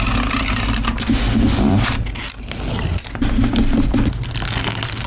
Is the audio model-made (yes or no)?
no